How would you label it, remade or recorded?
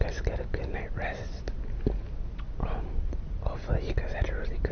recorded